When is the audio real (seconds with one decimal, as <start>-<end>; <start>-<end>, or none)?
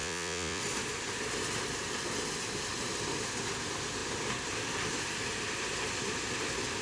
0.6-6.8